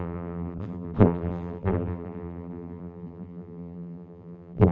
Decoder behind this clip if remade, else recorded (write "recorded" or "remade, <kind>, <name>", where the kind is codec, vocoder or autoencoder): remade, vocoder, BigVGAN v2